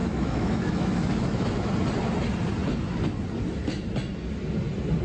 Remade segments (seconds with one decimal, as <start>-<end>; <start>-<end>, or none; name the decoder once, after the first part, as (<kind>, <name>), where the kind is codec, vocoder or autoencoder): 0.0-1.7 (autoencoder, DAC-VAE)